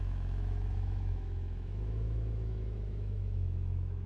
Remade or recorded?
remade